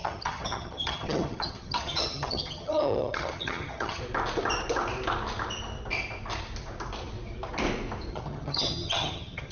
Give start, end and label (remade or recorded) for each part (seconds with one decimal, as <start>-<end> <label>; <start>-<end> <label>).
0.0-4.0 remade; 4.0-8.1 recorded; 8.1-9.5 remade